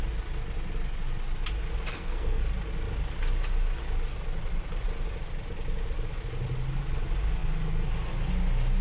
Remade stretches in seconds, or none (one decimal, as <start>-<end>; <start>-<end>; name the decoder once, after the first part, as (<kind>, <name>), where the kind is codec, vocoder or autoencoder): 1.9-2.4 (codec, SNAC)